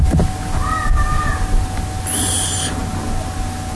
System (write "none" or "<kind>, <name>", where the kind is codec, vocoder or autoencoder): none